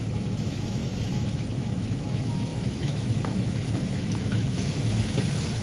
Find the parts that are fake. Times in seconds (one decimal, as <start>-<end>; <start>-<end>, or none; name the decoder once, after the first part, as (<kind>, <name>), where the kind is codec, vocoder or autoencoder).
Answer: 0.0-5.6 (autoencoder, DAC-VAE)